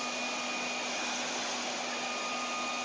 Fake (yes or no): no